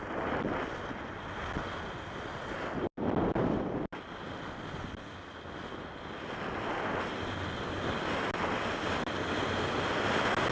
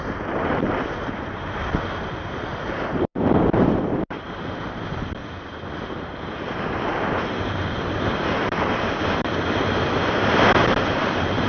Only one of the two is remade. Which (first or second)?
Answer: second